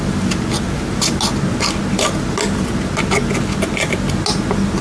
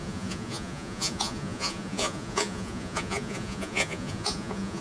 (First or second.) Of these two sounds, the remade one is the second